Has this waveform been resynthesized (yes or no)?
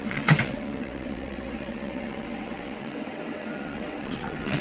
yes